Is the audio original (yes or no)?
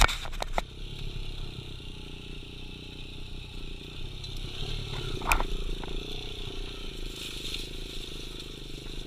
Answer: yes